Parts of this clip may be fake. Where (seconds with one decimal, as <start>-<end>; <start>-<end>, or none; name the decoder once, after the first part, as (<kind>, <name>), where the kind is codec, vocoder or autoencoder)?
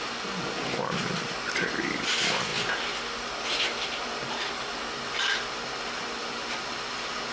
none